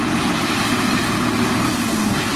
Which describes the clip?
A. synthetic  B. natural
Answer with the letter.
B